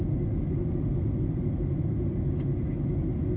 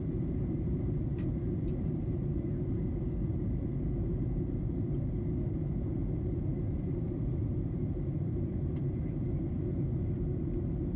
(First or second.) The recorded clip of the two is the first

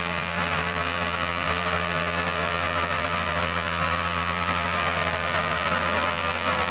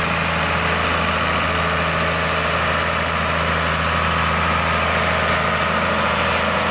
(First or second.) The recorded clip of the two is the second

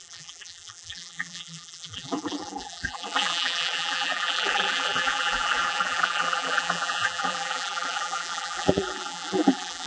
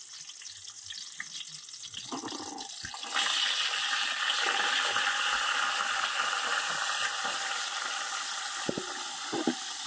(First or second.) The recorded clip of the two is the second